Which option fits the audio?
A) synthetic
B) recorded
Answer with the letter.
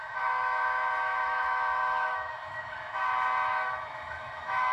A